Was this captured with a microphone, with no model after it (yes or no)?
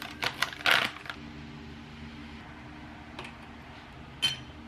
yes